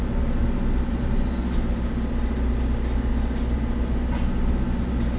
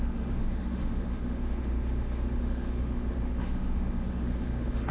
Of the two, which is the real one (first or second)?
first